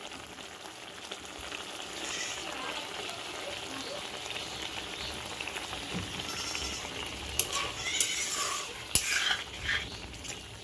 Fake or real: real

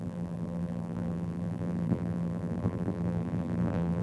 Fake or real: fake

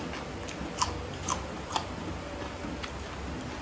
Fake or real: real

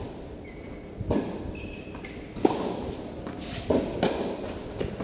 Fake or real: real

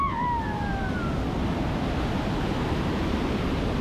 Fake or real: real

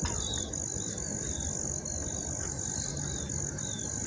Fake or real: real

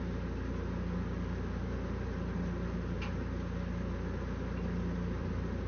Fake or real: real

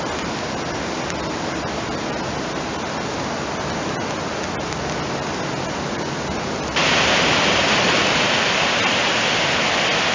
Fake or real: real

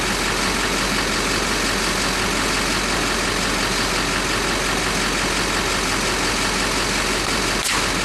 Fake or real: real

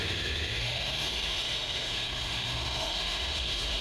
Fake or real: fake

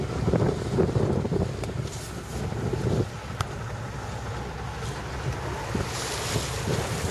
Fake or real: real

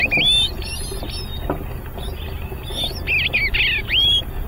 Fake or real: real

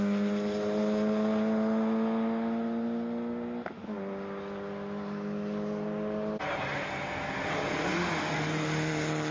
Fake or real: real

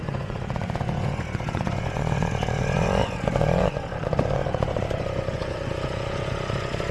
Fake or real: fake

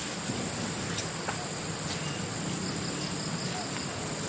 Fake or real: real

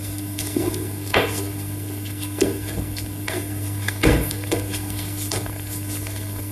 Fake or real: fake